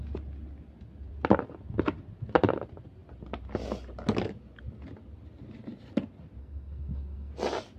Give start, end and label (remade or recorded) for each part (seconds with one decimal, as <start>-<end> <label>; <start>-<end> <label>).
0.0-6.4 recorded; 6.4-7.3 remade; 7.3-7.8 recorded